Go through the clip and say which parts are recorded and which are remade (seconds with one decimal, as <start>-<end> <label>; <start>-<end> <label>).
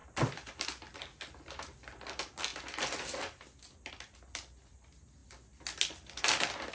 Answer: 0.0-6.7 recorded